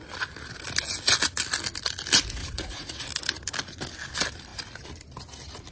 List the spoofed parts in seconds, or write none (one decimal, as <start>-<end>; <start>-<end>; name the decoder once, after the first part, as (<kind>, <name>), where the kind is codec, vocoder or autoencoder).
2.4-3.1 (vocoder, Vocos)